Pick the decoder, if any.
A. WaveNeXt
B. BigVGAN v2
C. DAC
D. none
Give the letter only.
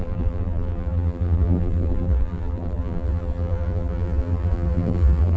B